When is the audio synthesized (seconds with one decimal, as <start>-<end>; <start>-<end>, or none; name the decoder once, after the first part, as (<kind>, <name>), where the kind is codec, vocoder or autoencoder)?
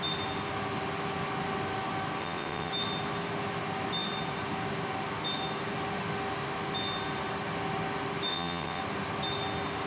2.2-2.7 (vocoder, WaveNeXt); 8.3-8.8